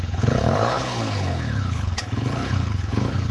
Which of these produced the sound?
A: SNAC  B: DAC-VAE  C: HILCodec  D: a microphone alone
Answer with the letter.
C